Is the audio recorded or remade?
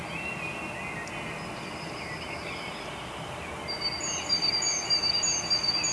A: recorded